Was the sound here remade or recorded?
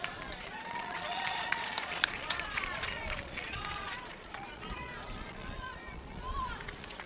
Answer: remade